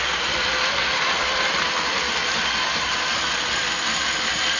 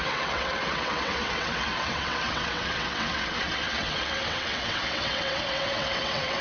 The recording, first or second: first